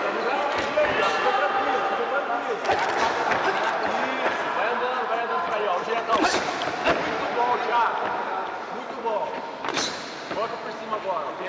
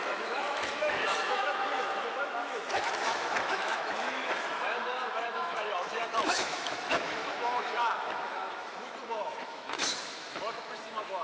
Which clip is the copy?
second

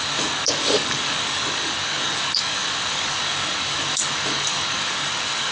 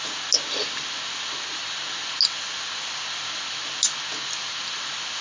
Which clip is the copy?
first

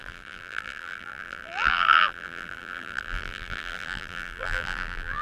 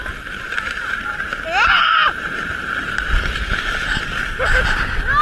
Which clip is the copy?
first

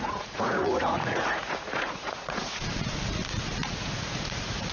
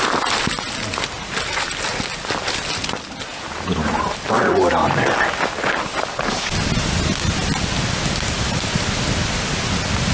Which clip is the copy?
first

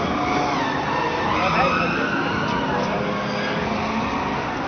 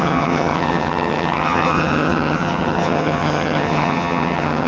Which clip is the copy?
second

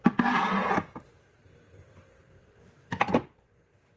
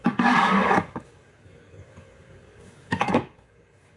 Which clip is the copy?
second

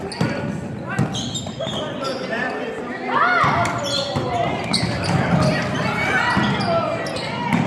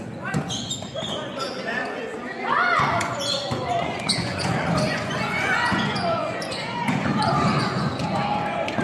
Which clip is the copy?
second